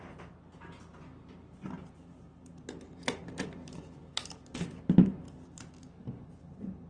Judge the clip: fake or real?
real